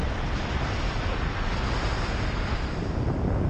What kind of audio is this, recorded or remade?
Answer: recorded